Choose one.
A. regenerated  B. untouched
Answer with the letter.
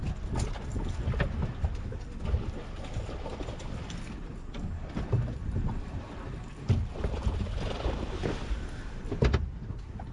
B